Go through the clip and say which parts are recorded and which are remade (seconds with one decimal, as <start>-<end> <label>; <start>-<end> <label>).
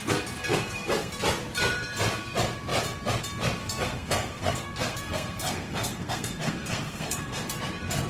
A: 0.0-1.2 remade; 1.2-3.6 recorded; 3.6-7.6 remade; 7.6-8.1 recorded